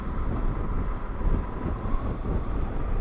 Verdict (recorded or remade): recorded